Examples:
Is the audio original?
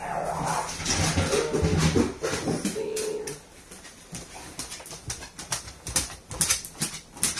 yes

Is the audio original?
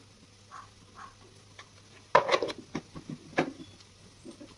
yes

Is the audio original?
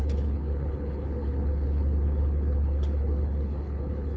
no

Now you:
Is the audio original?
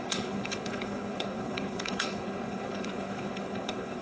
no